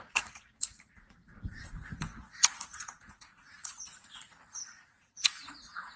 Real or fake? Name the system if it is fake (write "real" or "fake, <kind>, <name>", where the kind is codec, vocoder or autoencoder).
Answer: fake, vocoder, Vocos